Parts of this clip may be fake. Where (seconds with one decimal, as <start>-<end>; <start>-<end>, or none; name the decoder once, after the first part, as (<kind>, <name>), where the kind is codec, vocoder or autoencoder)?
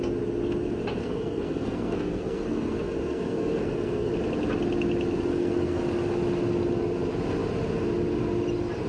1.0-4.1 (codec, SNAC); 5.3-5.8